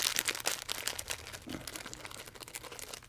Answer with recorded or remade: recorded